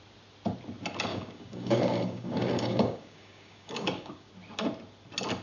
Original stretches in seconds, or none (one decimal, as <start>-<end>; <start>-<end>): 0.0-1.1; 4.3-5.4